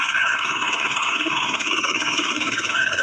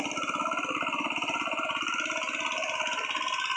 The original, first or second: second